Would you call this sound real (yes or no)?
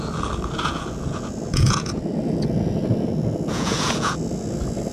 no